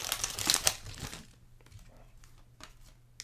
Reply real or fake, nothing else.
real